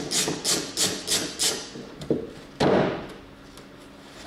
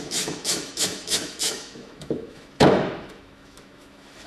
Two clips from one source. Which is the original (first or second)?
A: first